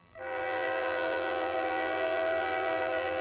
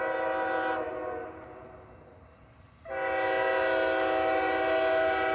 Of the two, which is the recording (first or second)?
second